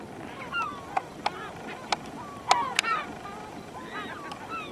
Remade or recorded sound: recorded